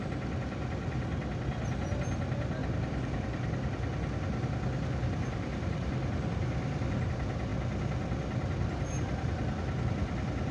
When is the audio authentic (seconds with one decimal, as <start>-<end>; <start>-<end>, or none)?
0.0-10.5